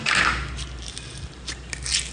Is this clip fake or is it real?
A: real